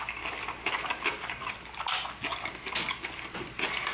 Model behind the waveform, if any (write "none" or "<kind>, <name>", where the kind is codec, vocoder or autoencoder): none